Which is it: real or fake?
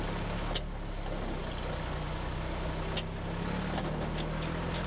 real